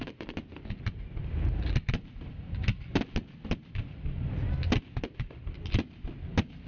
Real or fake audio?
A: real